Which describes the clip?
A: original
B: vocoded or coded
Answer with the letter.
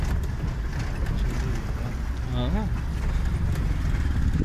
A